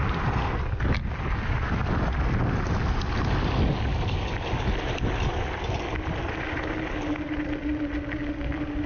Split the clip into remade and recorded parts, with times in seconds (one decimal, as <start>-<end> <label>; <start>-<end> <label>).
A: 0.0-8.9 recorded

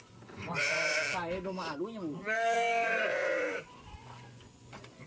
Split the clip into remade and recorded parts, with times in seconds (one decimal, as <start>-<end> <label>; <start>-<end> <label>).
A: 0.0-1.0 remade; 1.0-1.8 recorded; 1.8-5.1 remade

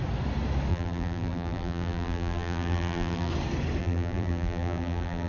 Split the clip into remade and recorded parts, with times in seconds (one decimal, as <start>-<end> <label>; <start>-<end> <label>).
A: 0.0-0.7 recorded; 0.7-3.3 remade; 3.3-3.8 recorded; 3.8-5.3 remade

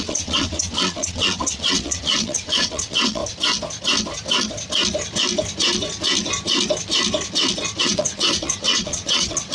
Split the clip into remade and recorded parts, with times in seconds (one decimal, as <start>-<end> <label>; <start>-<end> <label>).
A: 0.0-3.2 remade; 3.2-7.8 recorded; 7.8-9.5 remade

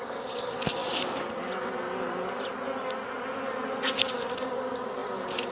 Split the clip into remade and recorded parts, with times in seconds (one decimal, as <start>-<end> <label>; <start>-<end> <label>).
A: 0.0-5.5 recorded

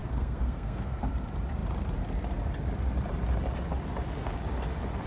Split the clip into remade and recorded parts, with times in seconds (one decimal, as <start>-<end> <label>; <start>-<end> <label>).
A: 0.0-1.0 remade; 1.0-5.1 recorded

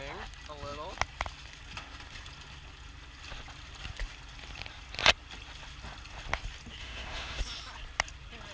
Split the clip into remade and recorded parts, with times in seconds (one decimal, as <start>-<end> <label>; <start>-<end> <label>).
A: 0.0-6.8 recorded; 6.8-7.4 remade; 7.4-8.5 recorded

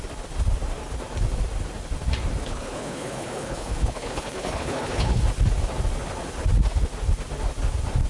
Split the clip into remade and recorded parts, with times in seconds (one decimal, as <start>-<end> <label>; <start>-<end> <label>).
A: 0.0-2.4 recorded; 2.4-5.2 remade; 5.2-8.1 recorded